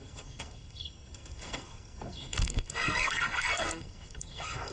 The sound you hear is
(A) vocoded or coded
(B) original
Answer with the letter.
A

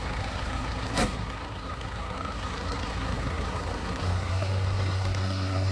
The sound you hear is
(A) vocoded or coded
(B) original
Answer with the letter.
A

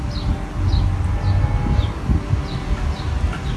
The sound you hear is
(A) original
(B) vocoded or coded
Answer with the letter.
A